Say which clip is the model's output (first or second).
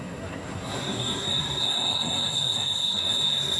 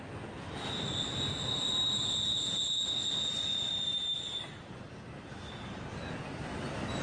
first